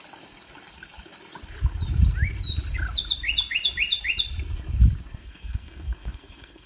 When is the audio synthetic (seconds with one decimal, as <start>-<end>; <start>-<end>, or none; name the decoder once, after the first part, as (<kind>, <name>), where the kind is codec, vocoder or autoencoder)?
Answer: 5.1-6.7 (codec, SNAC)

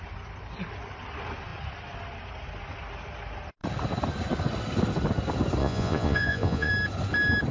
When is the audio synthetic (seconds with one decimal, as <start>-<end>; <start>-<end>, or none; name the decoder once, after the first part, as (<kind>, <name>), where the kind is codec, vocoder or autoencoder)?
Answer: 5.6-6.7 (vocoder, Vocos)

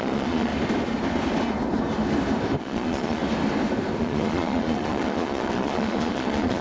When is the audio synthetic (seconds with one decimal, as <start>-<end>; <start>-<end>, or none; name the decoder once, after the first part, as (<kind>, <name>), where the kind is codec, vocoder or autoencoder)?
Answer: 0.0-0.5 (vocoder, Vocos); 2.6-3.2; 4.0-6.6

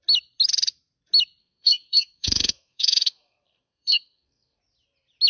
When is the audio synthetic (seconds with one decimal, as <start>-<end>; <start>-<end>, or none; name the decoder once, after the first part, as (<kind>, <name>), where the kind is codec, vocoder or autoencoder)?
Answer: 1.4-4.6 (codec, SNAC)